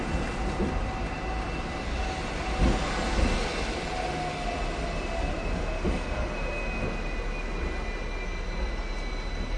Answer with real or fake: real